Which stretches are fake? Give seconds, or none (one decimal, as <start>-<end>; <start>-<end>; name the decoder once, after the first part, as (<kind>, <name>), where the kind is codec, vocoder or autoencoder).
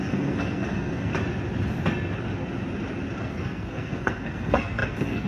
0.0-1.1 (codec, SNAC); 3.2-5.3